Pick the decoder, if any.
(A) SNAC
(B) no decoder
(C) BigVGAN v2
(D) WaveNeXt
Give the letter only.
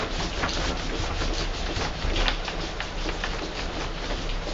B